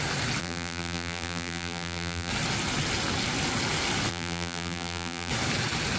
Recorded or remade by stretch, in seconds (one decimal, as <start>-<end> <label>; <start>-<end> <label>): 0.0-0.4 recorded; 0.4-2.3 remade; 2.3-4.1 recorded; 4.1-5.3 remade; 5.3-6.0 recorded